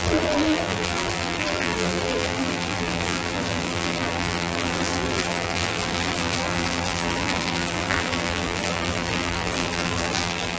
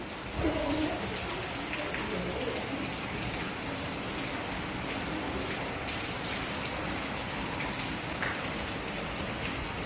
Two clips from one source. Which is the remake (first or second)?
first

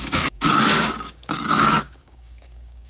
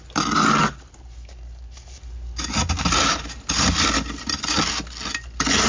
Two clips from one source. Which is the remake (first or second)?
first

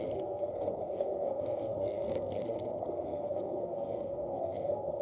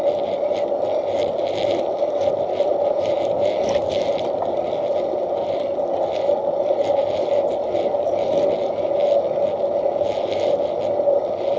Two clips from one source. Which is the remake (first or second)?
first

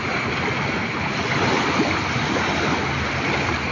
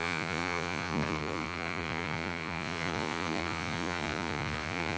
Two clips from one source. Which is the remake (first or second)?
second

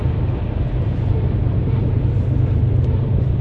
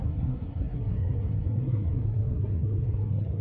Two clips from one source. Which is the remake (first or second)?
second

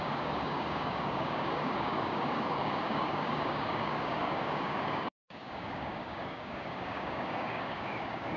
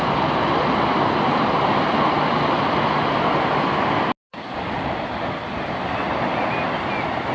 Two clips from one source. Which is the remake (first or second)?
first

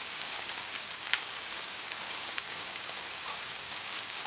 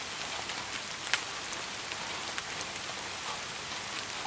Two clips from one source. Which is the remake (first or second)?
first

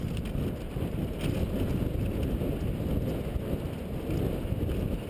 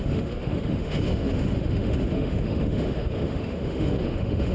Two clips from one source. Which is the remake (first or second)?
second